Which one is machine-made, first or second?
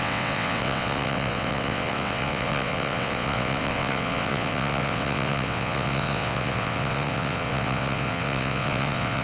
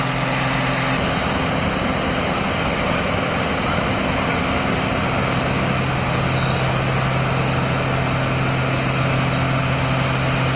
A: first